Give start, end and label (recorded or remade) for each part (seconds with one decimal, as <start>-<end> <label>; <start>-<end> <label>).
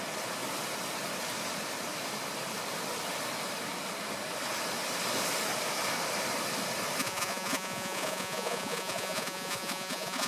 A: 0.0-7.0 recorded; 7.0-10.3 remade